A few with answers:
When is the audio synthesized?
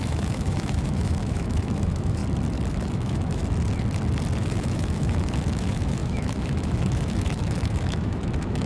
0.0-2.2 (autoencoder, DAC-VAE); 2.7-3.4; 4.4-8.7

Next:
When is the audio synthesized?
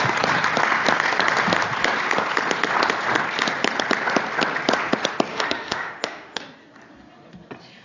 5.3-6.4 (autoencoder, DAC-VAE)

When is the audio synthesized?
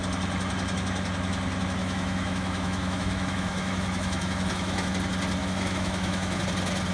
1.8-4.9 (autoencoder, DAC-VAE); 5.4-6.4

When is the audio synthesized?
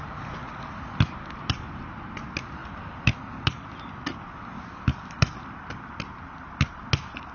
none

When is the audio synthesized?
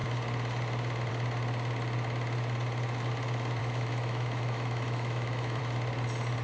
3.6-5.6 (autoencoder, DAC-VAE)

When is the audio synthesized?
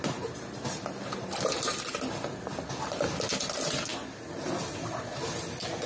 none